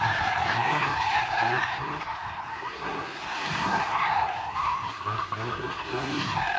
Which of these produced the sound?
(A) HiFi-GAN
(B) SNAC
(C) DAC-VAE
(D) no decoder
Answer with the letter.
B